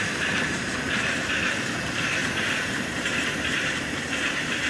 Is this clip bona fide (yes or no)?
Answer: no